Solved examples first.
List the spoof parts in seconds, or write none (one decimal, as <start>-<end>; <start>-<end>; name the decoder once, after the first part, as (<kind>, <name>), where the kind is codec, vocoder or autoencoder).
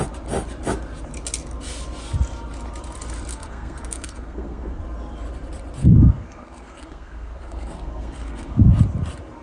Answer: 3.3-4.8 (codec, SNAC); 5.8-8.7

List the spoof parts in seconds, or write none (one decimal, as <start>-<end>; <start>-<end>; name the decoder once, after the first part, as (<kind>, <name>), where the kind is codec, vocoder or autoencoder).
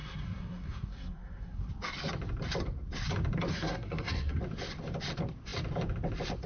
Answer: 0.0-1.7 (codec, SNAC); 3.5-4.4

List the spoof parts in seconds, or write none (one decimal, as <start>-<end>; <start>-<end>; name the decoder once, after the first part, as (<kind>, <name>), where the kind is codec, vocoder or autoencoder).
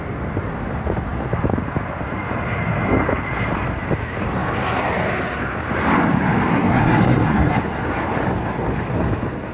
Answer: 6.5-7.6 (codec, SNAC)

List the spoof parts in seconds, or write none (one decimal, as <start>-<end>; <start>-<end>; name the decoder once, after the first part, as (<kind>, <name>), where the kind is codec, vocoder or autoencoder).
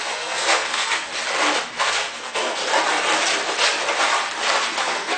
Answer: 0.0-1.1 (codec, SNAC); 1.8-2.6; 4.8-5.2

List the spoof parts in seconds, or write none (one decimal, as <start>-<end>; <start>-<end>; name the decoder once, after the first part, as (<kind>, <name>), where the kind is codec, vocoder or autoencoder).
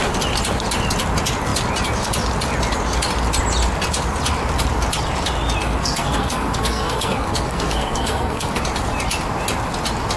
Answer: 5.6-8.6 (codec, SNAC)